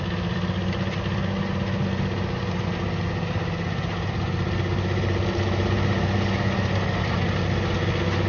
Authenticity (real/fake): real